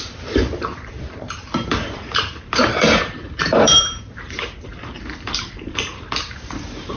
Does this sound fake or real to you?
fake